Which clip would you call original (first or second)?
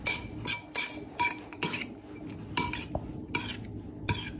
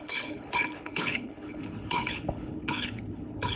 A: first